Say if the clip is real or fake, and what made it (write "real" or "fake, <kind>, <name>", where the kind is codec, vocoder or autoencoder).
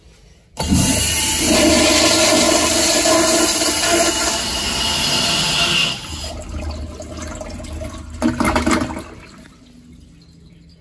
real